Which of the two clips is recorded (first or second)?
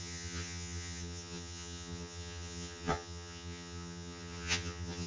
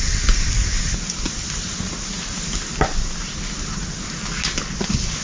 second